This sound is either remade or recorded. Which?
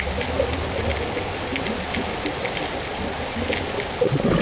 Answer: recorded